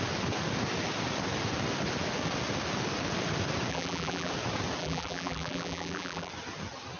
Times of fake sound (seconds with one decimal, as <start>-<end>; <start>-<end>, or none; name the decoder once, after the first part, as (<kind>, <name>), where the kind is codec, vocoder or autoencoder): 3.7-4.3 (vocoder, BigVGAN v2); 4.8-6.3